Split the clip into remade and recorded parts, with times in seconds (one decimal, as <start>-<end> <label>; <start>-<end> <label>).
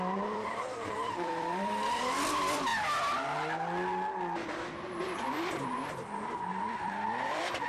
0.0-2.7 remade; 2.7-6.6 recorded; 6.6-7.7 remade